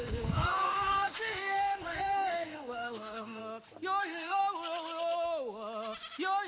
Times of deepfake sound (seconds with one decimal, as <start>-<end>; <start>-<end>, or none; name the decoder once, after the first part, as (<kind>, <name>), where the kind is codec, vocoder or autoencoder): 0.0-3.4 (codec, DAC); 4.0-4.4